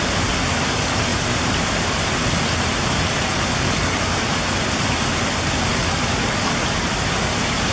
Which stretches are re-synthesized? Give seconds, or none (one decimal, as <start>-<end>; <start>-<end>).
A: 1.1-4.7